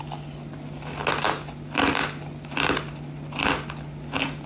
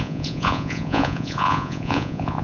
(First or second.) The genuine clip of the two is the first